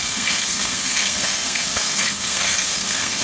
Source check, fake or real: fake